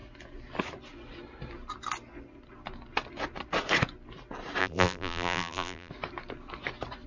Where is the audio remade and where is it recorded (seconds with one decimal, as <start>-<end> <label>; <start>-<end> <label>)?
0.0-4.6 recorded; 4.6-5.9 remade; 5.9-7.1 recorded